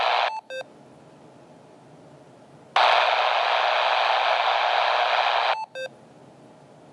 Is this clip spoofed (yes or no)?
no